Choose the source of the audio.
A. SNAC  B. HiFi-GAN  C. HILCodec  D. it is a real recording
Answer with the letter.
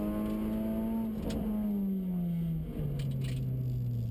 D